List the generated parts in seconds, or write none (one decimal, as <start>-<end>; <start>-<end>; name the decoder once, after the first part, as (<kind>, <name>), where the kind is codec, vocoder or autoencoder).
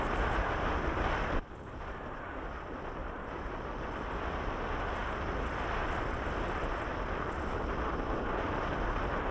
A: 3.0-3.5 (vocoder, BigVGAN v2)